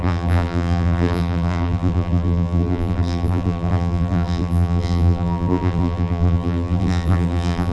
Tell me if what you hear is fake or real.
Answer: fake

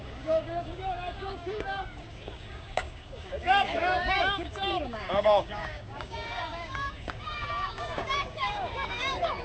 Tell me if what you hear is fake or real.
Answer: fake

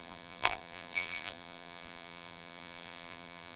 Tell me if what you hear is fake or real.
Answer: fake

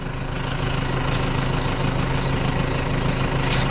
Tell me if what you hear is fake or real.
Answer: real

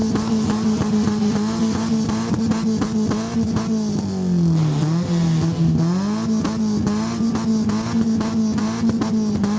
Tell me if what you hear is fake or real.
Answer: real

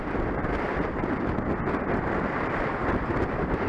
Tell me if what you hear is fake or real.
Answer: real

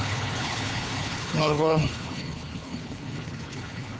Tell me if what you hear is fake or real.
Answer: fake